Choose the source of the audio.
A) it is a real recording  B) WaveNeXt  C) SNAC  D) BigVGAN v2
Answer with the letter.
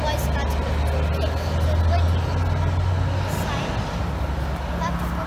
A